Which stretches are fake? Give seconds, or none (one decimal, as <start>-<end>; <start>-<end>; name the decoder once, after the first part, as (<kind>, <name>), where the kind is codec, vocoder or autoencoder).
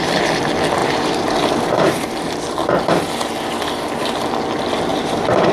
0.8-2.4 (vocoder, BigVGAN v2); 4.9-5.5